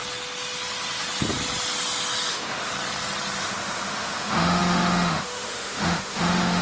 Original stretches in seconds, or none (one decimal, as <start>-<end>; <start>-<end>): 0.0-2.3; 2.7-3.4